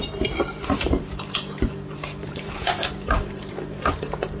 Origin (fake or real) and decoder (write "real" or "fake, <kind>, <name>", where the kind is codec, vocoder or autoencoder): fake, vocoder, BigVGAN v2